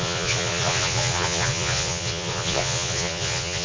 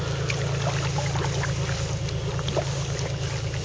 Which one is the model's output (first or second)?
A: first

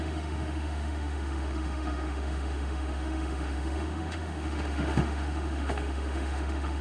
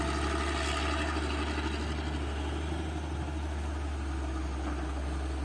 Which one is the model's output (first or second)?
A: first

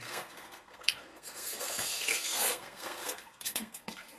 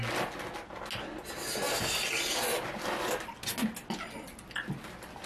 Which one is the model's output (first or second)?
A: first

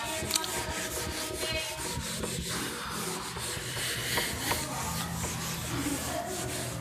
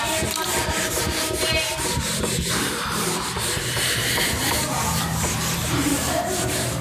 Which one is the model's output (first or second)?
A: second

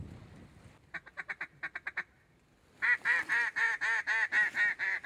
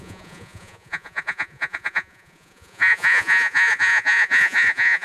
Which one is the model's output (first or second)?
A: second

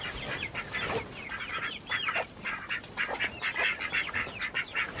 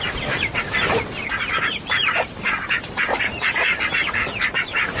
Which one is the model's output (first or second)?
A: second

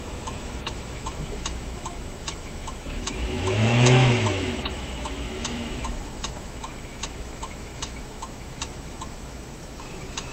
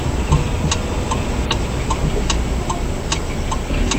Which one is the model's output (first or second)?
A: first